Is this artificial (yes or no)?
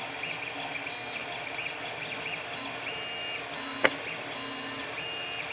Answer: no